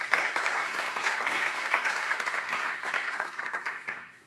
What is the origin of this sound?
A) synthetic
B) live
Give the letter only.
A